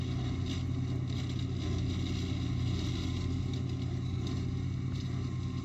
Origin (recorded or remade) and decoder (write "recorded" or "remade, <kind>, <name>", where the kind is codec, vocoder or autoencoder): recorded